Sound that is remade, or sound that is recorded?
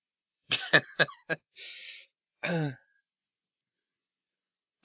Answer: remade